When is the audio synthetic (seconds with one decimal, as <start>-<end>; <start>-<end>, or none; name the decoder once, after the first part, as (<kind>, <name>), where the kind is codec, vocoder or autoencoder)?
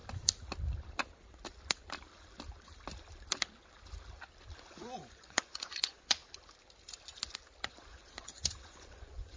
4.7-6.2 (vocoder, Vocos); 7.7-9.4